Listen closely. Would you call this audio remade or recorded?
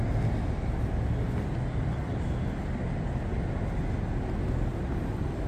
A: recorded